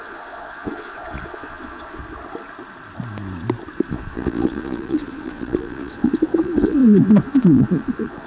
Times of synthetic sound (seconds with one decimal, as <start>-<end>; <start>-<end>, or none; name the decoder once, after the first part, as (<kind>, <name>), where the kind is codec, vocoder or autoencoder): 0.0-2.0 (vocoder, Vocos); 3.9-8.3